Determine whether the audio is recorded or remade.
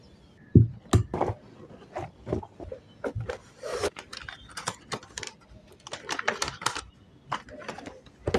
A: recorded